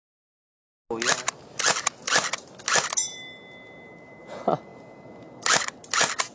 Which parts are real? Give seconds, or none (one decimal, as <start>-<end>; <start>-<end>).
0.0-6.3